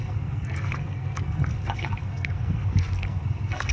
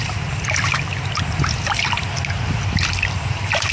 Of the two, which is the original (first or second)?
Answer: second